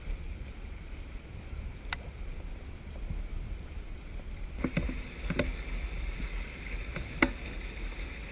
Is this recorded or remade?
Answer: recorded